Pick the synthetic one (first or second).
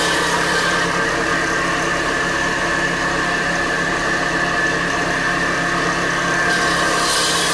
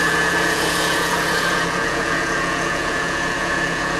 second